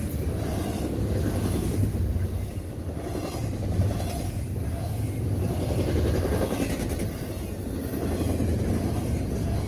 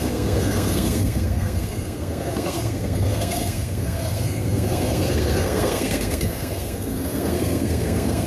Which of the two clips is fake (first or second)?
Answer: second